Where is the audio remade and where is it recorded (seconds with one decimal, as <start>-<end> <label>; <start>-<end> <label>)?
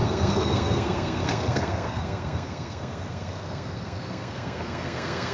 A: 0.0-5.3 remade